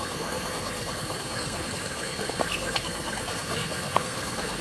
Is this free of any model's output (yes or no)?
no